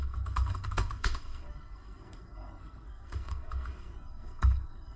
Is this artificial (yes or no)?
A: yes